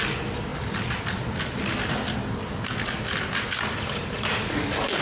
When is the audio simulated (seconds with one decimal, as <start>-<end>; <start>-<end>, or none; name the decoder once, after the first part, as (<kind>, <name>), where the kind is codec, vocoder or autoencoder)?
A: none